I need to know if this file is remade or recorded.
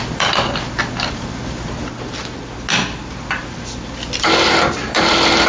recorded